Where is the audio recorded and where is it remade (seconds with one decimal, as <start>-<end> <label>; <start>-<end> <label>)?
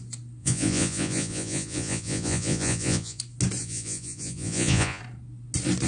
0.0-0.4 recorded; 0.4-3.2 remade; 3.2-3.6 recorded; 3.6-5.0 remade; 5.0-5.9 recorded